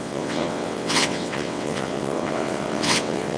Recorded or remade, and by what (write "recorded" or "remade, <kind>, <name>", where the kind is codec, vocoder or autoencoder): remade, vocoder, WaveNeXt